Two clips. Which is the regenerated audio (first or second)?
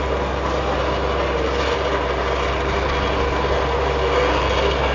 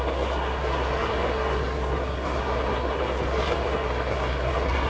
second